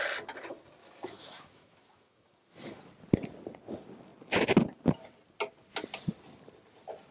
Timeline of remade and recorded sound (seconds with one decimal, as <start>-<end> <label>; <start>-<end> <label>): 0.0-0.8 recorded; 0.8-2.8 remade; 2.8-7.1 recorded